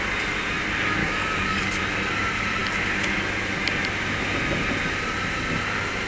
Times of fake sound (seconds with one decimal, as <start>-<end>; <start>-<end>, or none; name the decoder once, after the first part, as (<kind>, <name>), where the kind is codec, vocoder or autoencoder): 1.0-1.8 (codec, DAC)